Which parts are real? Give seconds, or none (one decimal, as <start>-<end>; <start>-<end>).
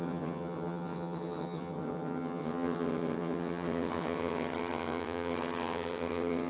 none